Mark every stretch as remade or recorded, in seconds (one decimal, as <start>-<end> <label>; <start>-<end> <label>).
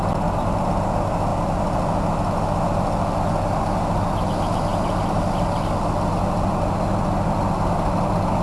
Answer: 0.0-8.4 recorded